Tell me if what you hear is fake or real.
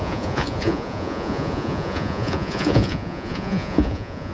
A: fake